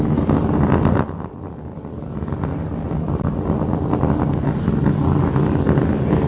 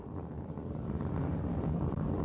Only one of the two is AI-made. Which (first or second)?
second